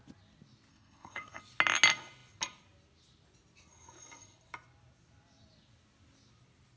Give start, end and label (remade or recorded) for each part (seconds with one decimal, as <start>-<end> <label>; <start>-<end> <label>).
0.0-0.7 recorded; 0.7-1.4 remade; 1.4-6.8 recorded